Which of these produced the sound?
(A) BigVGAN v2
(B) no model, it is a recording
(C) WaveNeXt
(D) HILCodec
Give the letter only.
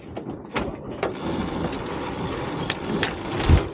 B